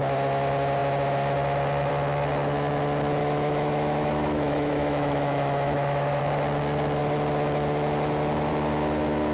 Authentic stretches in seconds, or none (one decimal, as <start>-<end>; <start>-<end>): 0.0-3.2; 6.2-9.3